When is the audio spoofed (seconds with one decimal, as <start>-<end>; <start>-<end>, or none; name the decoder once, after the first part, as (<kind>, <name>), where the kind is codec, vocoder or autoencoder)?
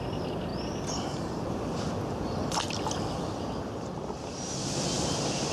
none